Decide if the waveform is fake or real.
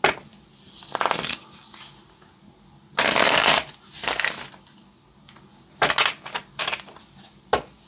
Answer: real